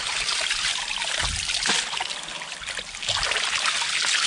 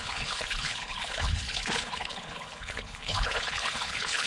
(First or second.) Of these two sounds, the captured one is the first